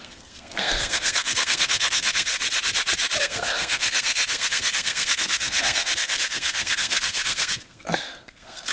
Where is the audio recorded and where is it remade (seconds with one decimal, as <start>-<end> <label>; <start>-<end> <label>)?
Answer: 0.0-2.3 remade; 2.3-3.2 recorded; 3.2-8.7 remade